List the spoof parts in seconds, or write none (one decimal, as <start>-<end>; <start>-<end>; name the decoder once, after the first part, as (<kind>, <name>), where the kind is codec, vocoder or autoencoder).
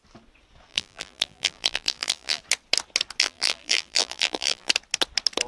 0.7-2.4 (vocoder, BigVGAN v2); 3.2-4.7